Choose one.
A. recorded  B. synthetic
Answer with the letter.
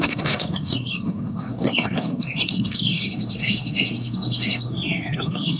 B